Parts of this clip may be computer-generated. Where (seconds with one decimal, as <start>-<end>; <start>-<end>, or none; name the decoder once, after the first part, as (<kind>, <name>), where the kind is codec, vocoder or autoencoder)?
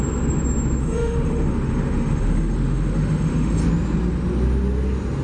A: 0.8-3.6 (autoencoder, DAC-VAE)